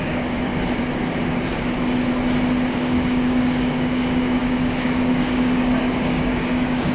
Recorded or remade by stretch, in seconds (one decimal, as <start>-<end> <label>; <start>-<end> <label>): 0.0-0.5 remade; 0.5-2.7 recorded; 2.7-6.9 remade